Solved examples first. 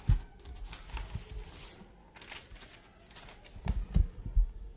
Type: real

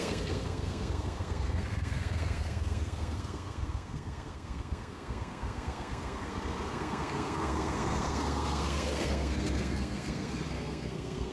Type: fake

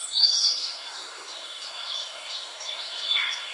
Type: fake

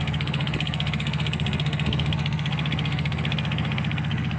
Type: fake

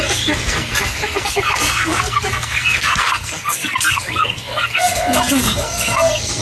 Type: fake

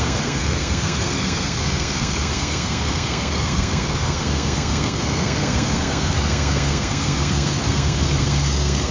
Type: fake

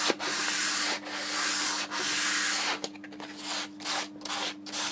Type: real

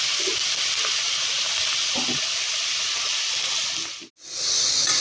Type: real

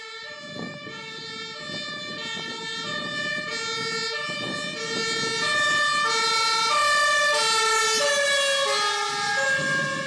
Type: real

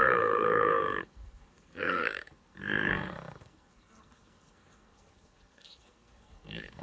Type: fake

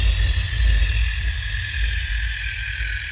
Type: real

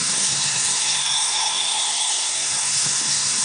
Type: fake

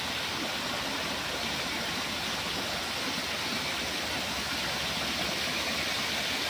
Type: real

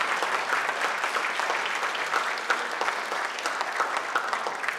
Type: real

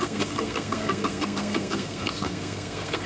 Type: fake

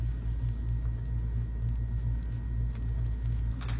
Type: real